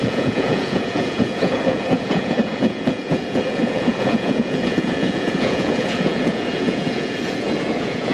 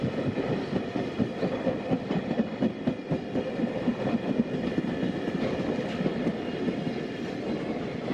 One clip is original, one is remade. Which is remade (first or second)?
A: first